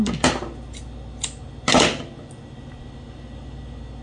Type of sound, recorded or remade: recorded